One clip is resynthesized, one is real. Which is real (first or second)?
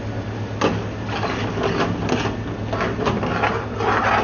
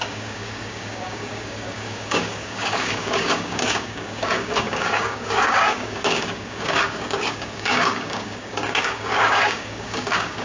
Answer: first